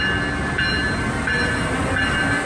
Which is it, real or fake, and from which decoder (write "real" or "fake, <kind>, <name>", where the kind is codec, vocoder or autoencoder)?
real